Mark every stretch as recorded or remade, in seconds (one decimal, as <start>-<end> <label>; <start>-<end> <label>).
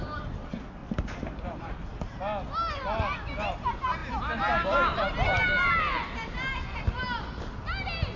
0.0-4.0 recorded; 4.0-5.1 remade; 5.1-8.2 recorded